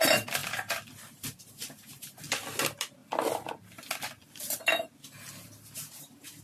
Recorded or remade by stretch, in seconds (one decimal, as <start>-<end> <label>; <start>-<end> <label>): 0.0-0.4 recorded; 0.4-2.2 remade; 2.2-6.4 recorded